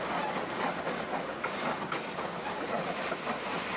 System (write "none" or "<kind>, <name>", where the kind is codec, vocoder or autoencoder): none